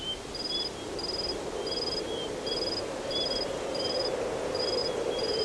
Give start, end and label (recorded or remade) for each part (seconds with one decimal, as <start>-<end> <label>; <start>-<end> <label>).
0.0-4.8 recorded; 4.8-5.4 remade